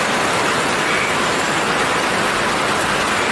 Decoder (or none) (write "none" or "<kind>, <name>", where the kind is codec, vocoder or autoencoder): none